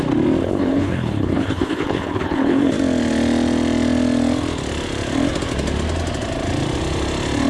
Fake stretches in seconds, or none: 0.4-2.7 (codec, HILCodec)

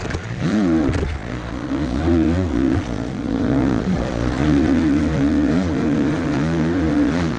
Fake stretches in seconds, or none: 0.0-7.4 (vocoder, Vocos)

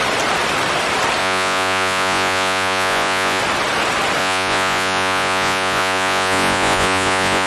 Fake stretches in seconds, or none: 1.2-3.4 (vocoder, Vocos); 4.2-7.5

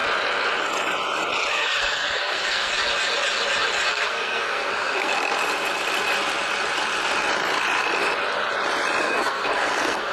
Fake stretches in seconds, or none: 1.5-2.7 (codec, SNAC); 3.9-5.1; 9.0-10.1

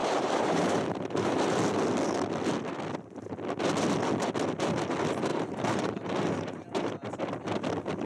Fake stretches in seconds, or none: 0.0-0.8 (vocoder, BigVGAN v2); 5.3-6.9

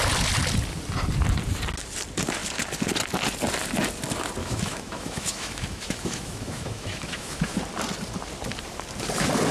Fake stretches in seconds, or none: 4.4-7.6 (autoencoder, DAC-VAE)

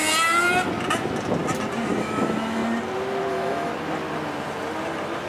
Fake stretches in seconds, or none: 2.0-2.6 (autoencoder, DAC-VAE); 3.3-3.7

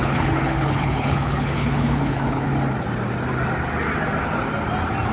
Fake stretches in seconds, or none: 0.0-2.5 (codec, HILCodec)